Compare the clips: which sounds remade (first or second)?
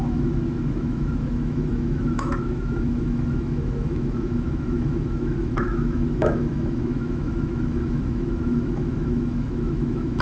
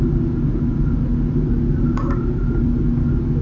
first